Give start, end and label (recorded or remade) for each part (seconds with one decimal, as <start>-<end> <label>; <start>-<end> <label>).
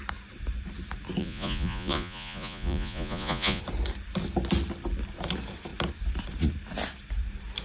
0.0-1.2 recorded; 1.2-3.6 remade; 3.6-7.6 recorded